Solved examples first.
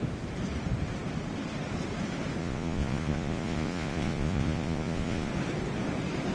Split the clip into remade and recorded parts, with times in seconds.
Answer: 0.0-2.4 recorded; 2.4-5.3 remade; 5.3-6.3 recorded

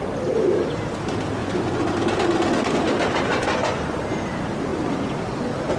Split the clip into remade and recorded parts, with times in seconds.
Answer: 0.0-1.4 recorded; 1.4-1.9 remade; 1.9-3.3 recorded; 3.3-4.0 remade; 4.0-5.8 recorded